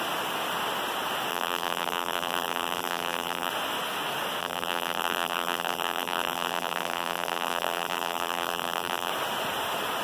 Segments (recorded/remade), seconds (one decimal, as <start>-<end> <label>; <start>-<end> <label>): 0.0-1.3 recorded; 1.3-3.5 remade; 3.5-4.4 recorded; 4.4-9.1 remade; 9.1-10.0 recorded